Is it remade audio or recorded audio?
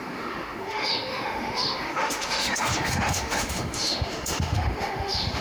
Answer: remade